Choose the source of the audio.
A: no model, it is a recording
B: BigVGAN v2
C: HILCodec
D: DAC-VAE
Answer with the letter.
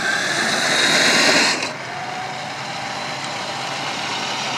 A